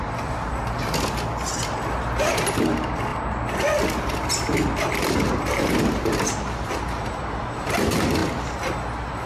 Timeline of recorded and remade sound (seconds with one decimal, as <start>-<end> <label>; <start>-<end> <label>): 0.0-5.6 recorded; 5.6-6.7 remade; 6.7-9.3 recorded